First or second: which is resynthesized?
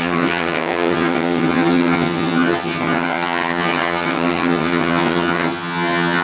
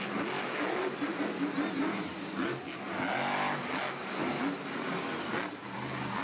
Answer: first